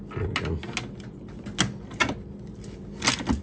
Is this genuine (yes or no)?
yes